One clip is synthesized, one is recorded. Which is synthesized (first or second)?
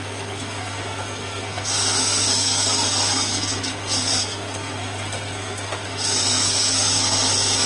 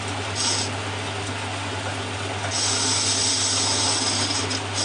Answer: first